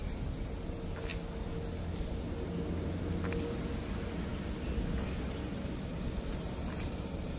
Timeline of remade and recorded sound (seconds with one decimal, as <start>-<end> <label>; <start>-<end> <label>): 0.0-7.4 recorded